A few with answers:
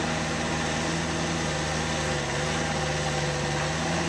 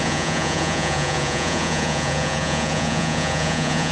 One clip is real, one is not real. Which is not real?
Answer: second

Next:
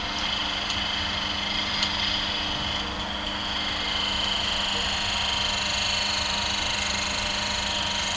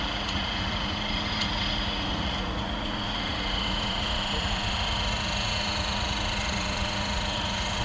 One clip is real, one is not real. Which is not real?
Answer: second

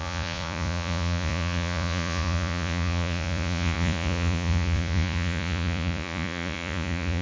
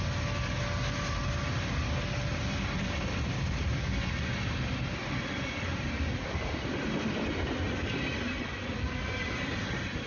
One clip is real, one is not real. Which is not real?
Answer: first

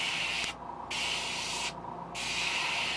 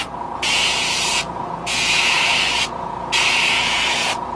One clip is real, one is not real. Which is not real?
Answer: second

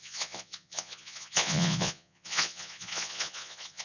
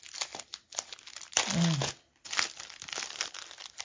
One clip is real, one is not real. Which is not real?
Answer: first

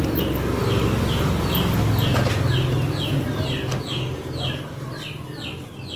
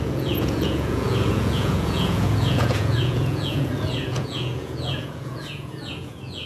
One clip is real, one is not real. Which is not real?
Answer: second